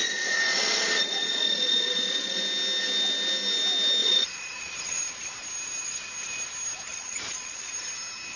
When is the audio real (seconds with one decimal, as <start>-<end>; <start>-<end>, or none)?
2.4-4.0; 5.0-6.9; 7.7-8.4